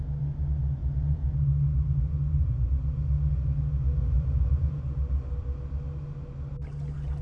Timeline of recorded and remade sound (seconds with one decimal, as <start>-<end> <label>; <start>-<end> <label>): 0.0-0.8 recorded; 0.8-2.7 remade; 2.7-4.0 recorded; 4.0-4.8 remade; 4.8-7.2 recorded